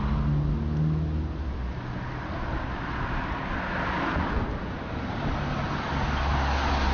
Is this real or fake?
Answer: real